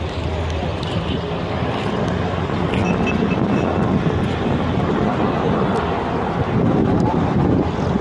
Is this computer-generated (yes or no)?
no